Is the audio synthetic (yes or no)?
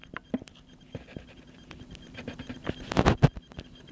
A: no